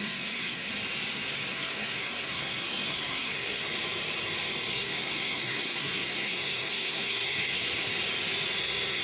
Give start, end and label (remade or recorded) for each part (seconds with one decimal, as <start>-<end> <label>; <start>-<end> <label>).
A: 0.0-0.7 remade; 0.7-1.3 recorded; 1.3-3.6 remade; 3.6-4.7 recorded; 4.7-7.9 remade; 7.9-8.6 recorded; 8.6-9.0 remade